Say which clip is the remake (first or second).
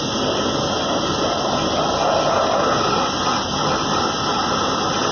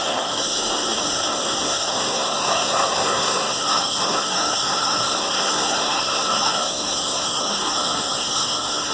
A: second